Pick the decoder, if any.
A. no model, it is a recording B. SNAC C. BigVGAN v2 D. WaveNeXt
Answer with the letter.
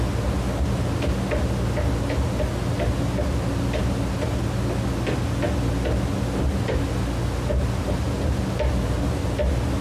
A